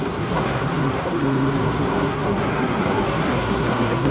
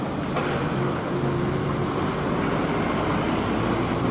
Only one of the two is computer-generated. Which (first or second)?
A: first